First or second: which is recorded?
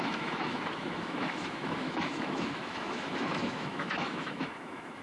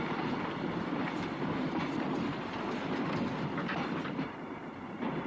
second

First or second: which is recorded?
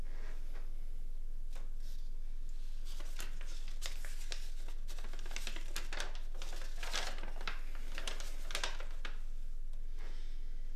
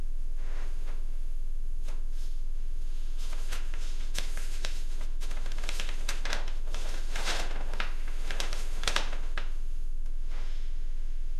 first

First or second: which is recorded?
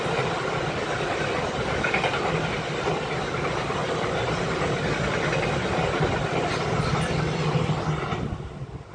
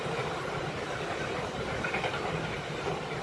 first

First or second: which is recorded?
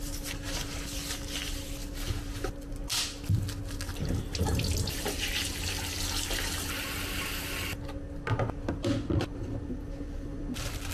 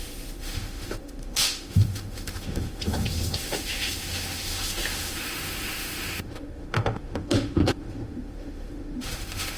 first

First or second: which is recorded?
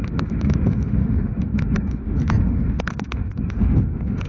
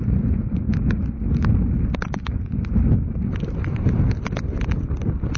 second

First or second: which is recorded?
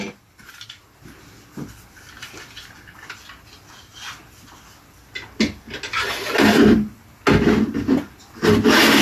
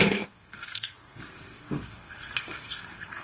first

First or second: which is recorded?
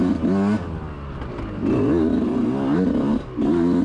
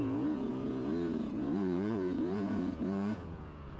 first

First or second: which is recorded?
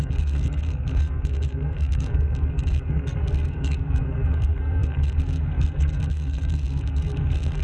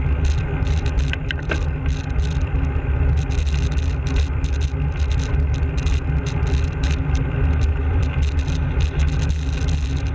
second